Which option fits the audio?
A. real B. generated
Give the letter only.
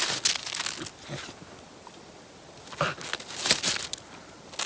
A